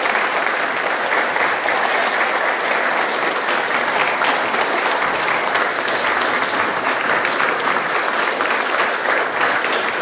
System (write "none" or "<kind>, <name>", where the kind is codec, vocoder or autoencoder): none